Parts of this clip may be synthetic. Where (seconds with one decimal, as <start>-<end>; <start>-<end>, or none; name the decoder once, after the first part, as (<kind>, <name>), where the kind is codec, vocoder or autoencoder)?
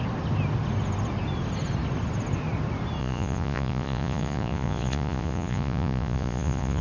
3.0-6.8 (vocoder, Vocos)